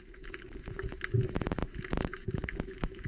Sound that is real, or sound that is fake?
fake